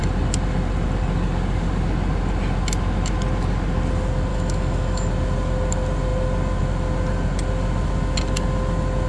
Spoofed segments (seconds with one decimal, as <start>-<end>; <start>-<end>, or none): 4.3-5.1